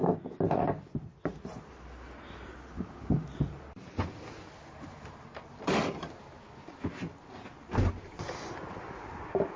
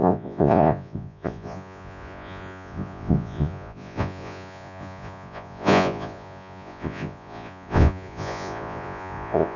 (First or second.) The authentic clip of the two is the first